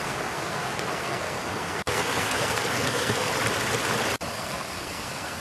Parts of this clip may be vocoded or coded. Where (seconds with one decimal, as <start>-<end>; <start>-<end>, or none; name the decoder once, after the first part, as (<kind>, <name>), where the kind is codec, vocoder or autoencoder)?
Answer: 0.0-3.3 (codec, SNAC); 4.3-5.4